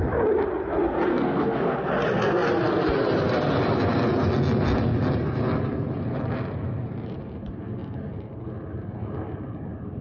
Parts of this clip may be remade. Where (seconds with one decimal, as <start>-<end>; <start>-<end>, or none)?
1.1-1.9